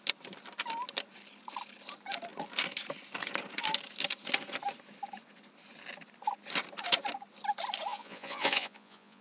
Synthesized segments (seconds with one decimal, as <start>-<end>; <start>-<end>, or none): 7.9-9.2